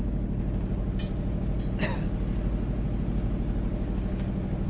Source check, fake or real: real